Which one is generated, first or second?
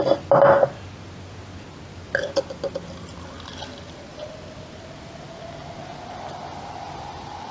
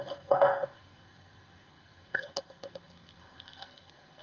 second